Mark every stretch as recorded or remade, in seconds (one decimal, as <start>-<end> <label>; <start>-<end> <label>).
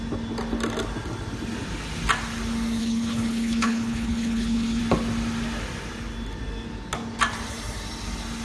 0.0-2.8 recorded; 2.8-4.8 remade; 4.8-8.4 recorded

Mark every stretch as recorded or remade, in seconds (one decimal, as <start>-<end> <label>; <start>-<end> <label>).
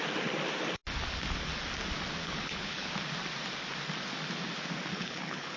0.0-2.2 recorded; 2.2-2.9 remade; 2.9-4.9 recorded; 4.9-5.6 remade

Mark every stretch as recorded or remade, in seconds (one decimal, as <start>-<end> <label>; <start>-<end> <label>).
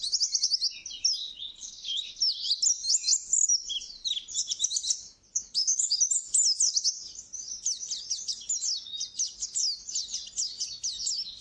0.0-1.2 recorded; 1.2-2.2 remade; 2.2-5.4 recorded; 5.4-6.0 remade; 6.0-11.4 recorded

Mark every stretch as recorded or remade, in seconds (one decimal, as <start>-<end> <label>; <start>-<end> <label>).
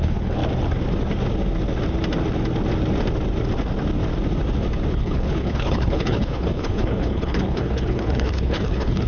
0.0-0.4 remade; 0.4-4.9 recorded; 4.9-9.1 remade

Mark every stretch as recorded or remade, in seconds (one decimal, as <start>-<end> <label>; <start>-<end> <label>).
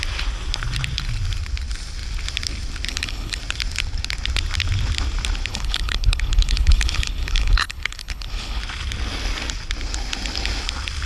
0.0-2.9 recorded; 2.9-3.4 remade; 3.4-5.5 recorded; 5.5-8.6 remade; 8.6-11.1 recorded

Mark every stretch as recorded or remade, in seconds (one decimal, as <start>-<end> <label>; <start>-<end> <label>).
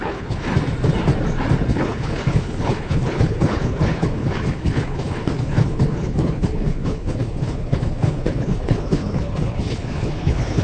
0.0-0.5 remade; 0.5-1.7 recorded; 1.7-10.6 remade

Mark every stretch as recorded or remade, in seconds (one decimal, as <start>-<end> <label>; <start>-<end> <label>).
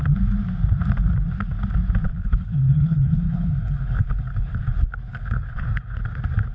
0.0-2.2 recorded; 2.2-4.6 remade; 4.6-5.1 recorded; 5.1-6.0 remade; 6.0-6.5 recorded